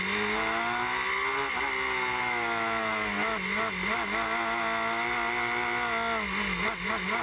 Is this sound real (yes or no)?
yes